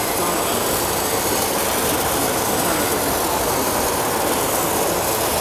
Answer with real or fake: real